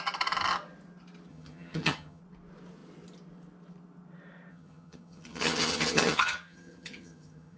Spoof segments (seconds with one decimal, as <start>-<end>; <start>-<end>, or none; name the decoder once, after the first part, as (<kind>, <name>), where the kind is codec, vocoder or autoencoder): 1.3-2.2 (vocoder, HiFi-GAN); 4.5-7.6